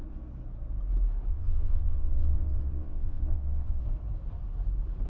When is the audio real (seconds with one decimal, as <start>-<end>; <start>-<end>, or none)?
0.0-1.3; 3.8-5.1